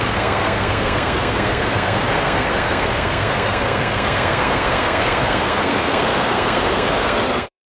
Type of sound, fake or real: fake